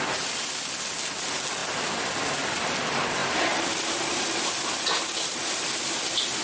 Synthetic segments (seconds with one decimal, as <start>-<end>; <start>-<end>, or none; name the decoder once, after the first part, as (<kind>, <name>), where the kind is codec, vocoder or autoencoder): 3.2-4.5 (vocoder, BigVGAN v2)